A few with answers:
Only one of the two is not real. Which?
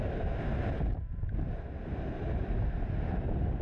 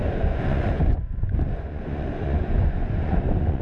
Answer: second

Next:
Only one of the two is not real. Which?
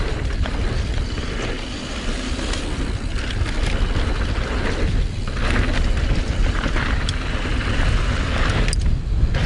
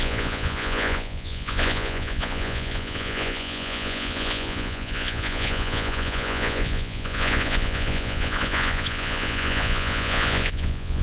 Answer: second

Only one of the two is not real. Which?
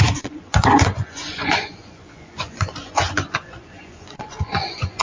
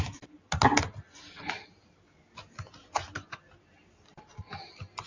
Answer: first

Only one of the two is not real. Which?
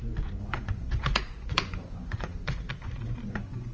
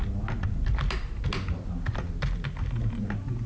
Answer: first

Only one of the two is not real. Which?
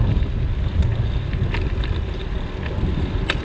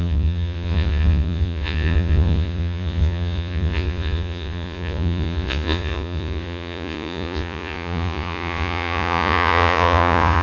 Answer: second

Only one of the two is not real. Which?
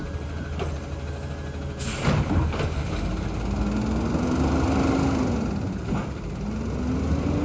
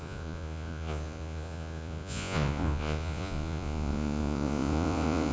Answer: second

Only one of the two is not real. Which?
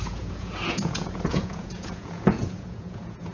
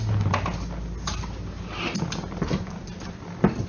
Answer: first